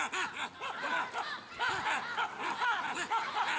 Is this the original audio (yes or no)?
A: yes